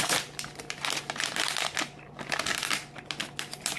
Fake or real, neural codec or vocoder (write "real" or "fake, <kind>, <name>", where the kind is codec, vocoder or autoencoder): real